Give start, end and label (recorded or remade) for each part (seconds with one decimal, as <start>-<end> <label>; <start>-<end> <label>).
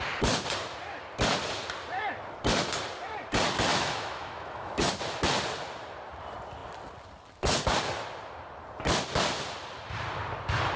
0.0-3.7 recorded; 3.7-4.8 remade; 4.8-10.8 recorded